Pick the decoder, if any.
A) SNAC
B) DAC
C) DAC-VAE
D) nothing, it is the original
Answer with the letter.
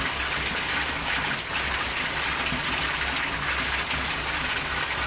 D